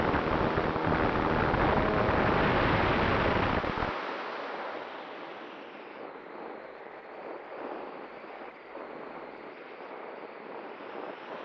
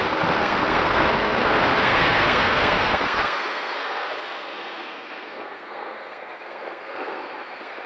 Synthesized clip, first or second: second